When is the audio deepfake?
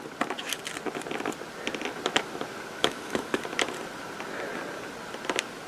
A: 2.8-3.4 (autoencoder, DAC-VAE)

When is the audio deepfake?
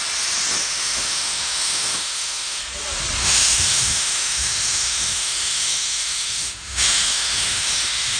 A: 0.6-2.6 (autoencoder, DAC-VAE); 3.2-8.2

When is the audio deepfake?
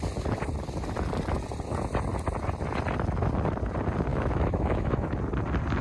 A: 4.1-5.1 (autoencoder, DAC-VAE)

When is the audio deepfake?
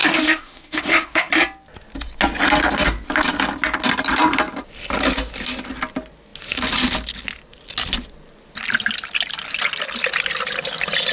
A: 0.0-1.3 (autoencoder, DAC-VAE)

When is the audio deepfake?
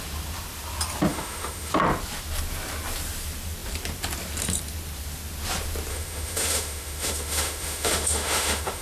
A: 1.1-1.7 (autoencoder, DAC-VAE); 5.9-8.8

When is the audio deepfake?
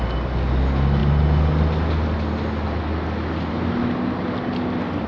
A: none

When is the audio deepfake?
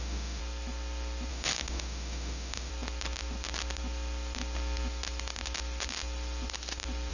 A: 0.0-0.4 (autoencoder, DAC-VAE); 1.3-2.7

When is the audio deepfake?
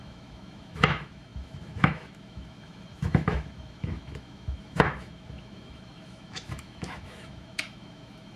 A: 0.0-8.4 (autoencoder, DAC-VAE)